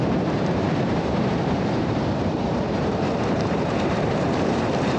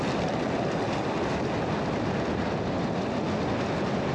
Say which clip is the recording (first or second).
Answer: second